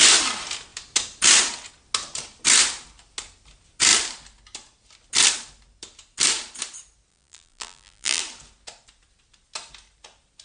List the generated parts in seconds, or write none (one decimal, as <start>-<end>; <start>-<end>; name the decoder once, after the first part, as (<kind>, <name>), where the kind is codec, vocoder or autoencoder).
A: 7.1-8.2 (vocoder, BigVGAN v2)